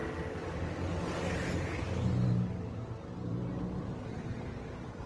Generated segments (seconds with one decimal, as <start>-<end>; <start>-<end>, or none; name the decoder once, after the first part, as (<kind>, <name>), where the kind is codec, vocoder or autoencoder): none